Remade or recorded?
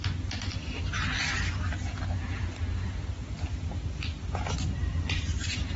recorded